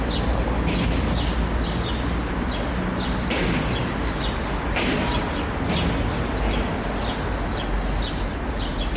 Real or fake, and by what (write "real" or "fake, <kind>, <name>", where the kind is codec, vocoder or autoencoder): real